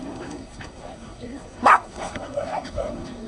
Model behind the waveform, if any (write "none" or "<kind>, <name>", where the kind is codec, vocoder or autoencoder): codec, SNAC